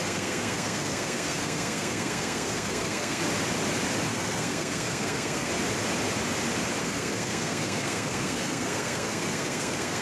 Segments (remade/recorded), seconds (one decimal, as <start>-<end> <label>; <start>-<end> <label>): 0.0-3.2 remade; 3.2-4.1 recorded; 4.1-5.5 remade; 5.5-6.8 recorded; 6.8-10.0 remade